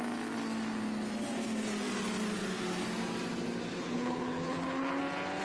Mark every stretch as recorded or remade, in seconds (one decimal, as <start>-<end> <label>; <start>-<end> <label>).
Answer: 0.0-3.7 recorded; 3.7-5.0 remade; 5.0-5.4 recorded